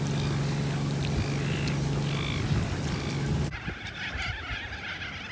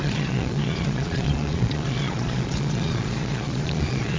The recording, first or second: first